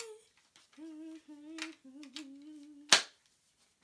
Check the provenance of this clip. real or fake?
real